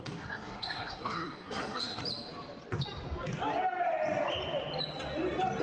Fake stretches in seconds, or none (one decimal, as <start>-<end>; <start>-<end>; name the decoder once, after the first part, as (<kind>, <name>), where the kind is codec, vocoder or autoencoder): 0.0-2.0 (codec, SNAC)